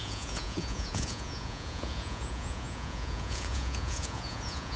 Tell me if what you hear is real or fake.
fake